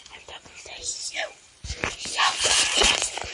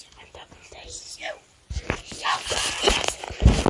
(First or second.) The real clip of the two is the second